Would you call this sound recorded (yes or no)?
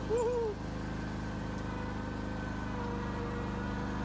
yes